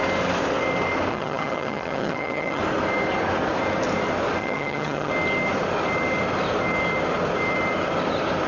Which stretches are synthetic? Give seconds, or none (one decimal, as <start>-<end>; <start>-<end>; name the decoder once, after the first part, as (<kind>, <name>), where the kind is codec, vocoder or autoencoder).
1.1-2.6 (vocoder, HiFi-GAN); 4.4-5.1

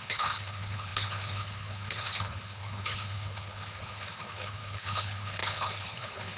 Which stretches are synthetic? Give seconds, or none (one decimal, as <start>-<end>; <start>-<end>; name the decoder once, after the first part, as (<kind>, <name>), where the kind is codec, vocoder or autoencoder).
0.0-6.4 (codec, HILCodec)